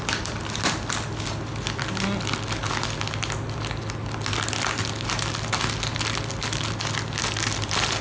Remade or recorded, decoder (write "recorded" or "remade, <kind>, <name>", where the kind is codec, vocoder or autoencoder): recorded